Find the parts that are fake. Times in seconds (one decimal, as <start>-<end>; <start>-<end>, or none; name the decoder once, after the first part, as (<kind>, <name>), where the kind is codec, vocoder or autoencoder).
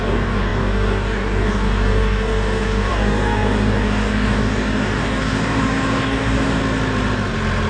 0.0-6.6 (codec, DAC)